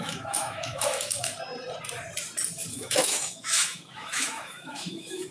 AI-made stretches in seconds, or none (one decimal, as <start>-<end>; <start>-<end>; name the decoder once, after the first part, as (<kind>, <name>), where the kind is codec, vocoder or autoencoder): 0.0-1.3 (autoencoder, DAC-VAE); 2.7-5.3